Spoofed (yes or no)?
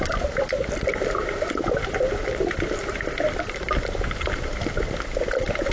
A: yes